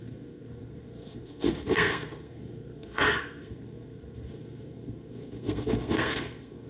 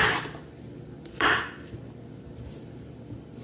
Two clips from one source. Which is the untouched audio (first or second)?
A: second